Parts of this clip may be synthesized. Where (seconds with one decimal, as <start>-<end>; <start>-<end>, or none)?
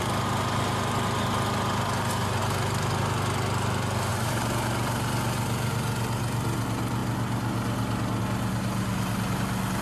none